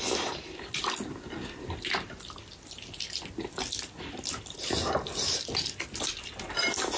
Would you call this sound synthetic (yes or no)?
no